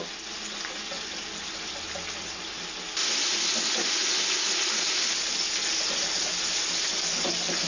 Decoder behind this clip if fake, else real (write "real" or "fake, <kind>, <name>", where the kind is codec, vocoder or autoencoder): real